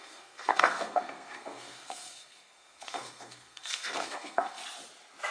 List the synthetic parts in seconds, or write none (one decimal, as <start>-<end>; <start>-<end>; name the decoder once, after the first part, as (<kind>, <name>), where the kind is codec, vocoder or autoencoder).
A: 0.0-4.6 (codec, SNAC)